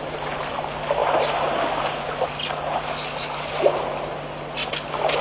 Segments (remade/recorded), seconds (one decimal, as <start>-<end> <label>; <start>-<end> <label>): 0.0-5.2 recorded